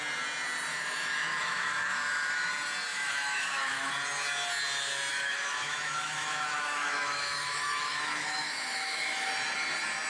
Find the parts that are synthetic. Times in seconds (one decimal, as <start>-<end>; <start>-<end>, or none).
0.7-2.5; 2.9-3.9; 5.1-9.3